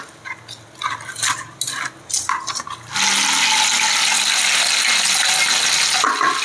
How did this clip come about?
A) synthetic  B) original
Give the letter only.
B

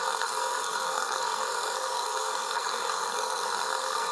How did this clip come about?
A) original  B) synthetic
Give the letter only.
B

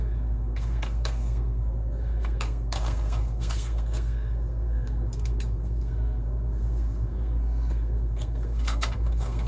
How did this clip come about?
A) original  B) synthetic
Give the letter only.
B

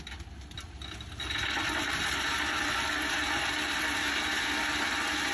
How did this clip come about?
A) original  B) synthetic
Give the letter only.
A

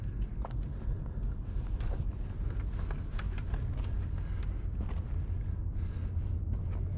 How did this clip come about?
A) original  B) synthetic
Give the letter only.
A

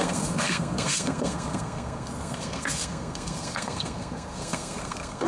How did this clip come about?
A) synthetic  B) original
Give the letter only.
A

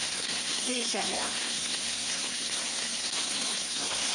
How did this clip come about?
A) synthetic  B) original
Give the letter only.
A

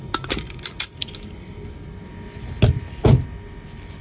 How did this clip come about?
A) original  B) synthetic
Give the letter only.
A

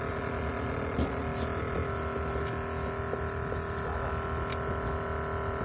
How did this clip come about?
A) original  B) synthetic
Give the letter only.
A